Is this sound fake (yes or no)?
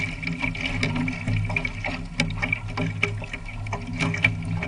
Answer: no